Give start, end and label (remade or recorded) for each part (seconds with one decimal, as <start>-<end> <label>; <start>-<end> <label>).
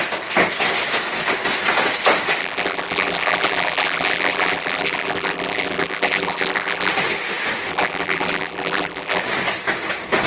0.0-2.4 recorded; 2.4-6.9 remade; 6.9-7.7 recorded; 7.7-9.2 remade; 9.2-10.3 recorded